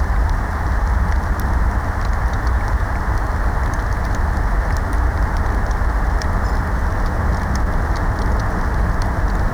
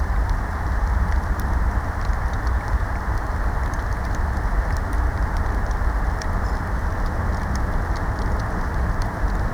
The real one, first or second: first